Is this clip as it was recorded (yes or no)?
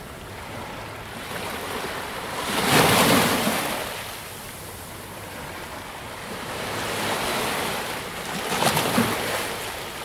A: yes